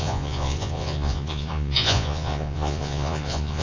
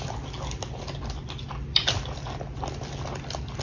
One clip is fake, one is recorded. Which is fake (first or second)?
first